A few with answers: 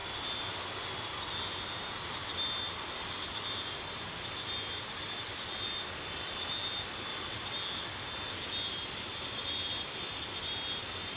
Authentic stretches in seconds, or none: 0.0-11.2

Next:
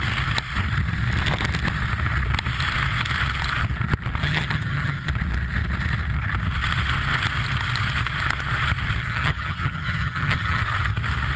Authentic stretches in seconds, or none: 0.0-4.2; 5.1-9.0; 10.6-11.4

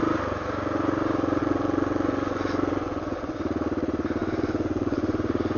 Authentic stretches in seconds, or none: 0.0-1.4; 3.4-4.2

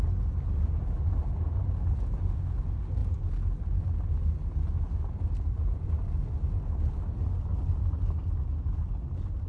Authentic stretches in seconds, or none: 0.0-9.5

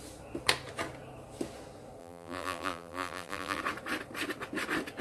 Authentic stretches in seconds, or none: 0.0-2.0; 3.6-5.0

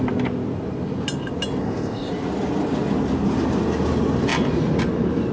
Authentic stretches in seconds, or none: 0.0-1.6; 2.1-5.3

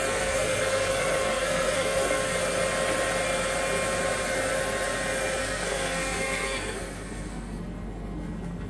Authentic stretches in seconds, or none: 2.3-5.4

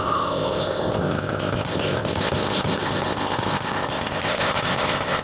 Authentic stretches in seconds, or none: none